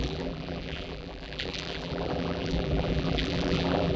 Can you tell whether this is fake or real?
fake